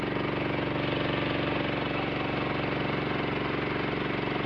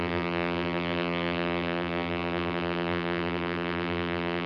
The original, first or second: first